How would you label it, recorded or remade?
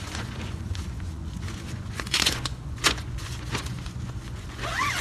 remade